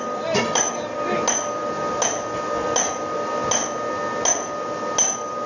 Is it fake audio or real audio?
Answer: real